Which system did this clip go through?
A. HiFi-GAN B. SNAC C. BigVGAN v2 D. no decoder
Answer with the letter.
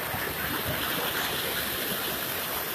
C